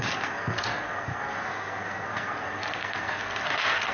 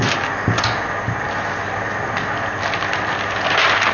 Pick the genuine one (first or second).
second